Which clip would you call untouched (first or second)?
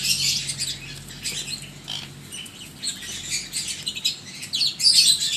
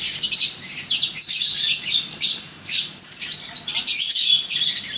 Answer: first